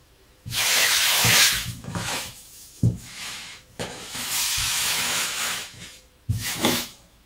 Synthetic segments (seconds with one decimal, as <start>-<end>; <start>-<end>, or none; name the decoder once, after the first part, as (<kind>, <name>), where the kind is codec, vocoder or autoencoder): 0.0-7.3 (autoencoder, DAC-VAE)